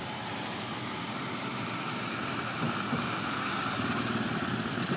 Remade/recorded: recorded